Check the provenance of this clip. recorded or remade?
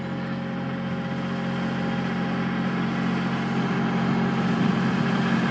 recorded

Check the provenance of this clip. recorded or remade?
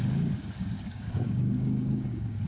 remade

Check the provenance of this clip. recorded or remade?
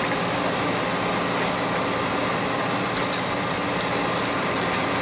recorded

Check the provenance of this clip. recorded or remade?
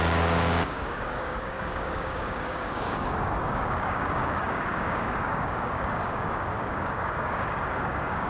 remade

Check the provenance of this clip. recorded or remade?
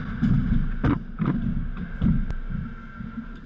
recorded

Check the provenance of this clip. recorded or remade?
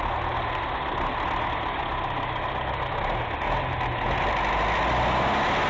recorded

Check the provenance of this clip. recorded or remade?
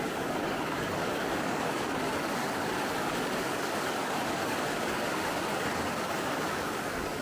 remade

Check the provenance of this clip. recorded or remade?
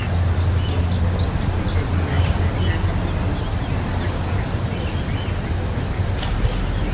recorded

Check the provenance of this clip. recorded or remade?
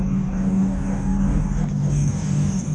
remade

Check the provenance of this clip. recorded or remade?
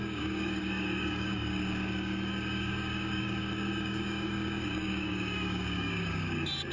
remade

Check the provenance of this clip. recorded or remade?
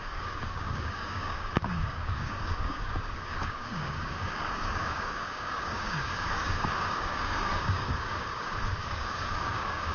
remade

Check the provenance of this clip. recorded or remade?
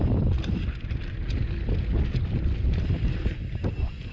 recorded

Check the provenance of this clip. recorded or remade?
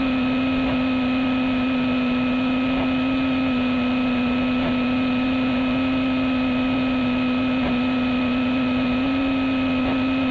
recorded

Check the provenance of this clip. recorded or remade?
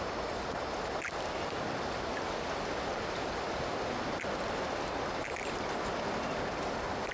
recorded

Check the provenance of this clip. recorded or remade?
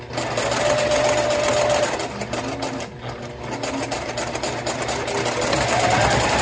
recorded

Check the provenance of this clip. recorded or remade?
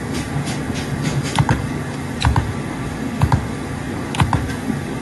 remade